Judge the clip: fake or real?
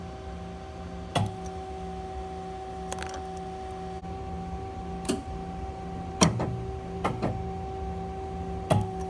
real